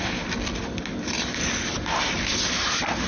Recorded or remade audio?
recorded